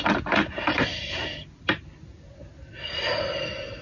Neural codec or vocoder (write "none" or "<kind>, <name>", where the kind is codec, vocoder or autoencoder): none